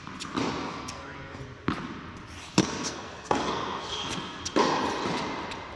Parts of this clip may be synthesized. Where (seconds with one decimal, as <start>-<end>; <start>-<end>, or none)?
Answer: 0.6-1.4; 2.6-4.4